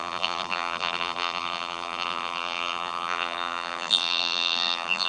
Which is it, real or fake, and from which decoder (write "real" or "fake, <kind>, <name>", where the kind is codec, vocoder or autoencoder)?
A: fake, vocoder, BigVGAN v2